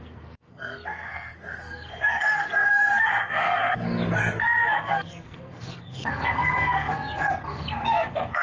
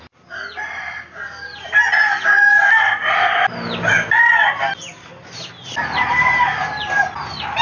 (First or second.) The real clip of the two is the second